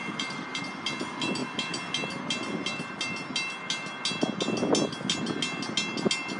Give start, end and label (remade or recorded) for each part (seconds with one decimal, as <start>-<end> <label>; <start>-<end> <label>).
0.0-0.6 remade; 0.6-6.4 recorded